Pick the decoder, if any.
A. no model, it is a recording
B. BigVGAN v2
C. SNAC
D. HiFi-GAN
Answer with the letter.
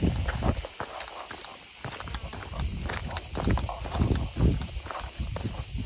A